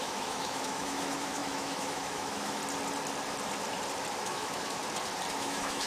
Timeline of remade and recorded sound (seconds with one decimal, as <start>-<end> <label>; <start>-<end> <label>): 0.0-2.6 remade; 2.6-4.2 recorded; 4.2-4.8 remade; 4.8-5.3 recorded; 5.3-5.9 remade